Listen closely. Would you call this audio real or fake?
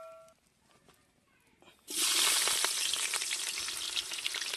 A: real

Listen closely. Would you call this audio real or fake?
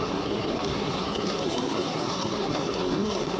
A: fake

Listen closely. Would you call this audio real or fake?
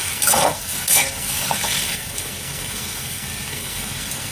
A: fake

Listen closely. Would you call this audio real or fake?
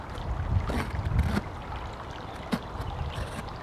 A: real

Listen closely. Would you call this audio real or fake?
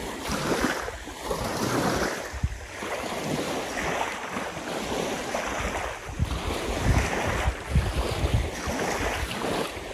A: real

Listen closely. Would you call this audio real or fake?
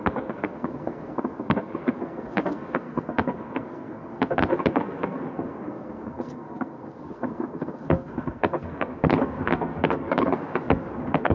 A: fake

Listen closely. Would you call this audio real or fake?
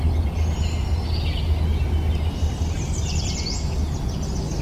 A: real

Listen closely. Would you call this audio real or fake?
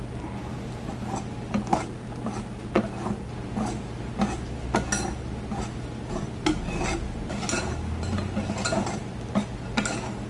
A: real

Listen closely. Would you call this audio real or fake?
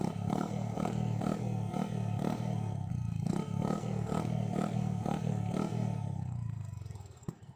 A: fake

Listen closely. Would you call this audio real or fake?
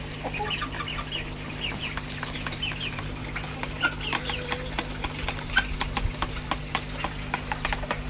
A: real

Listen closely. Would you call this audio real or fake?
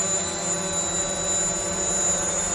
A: real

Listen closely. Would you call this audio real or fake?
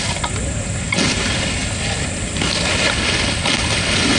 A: real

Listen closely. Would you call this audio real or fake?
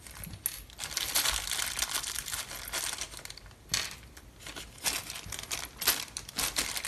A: real